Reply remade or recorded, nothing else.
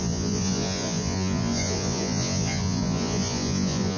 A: remade